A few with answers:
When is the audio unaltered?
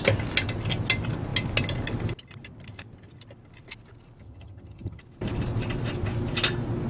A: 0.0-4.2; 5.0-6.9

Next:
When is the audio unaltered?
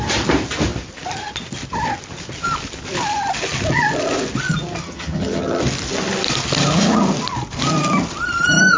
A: 0.0-4.8; 5.6-8.8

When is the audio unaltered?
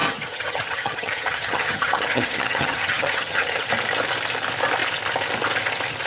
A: 3.7-6.1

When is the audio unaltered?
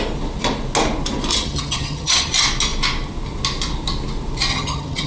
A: 0.0-1.3; 2.3-4.5